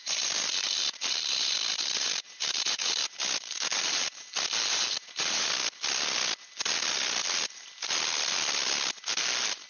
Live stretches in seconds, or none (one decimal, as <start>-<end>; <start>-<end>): 3.0-3.7; 4.3-4.7; 5.5-9.7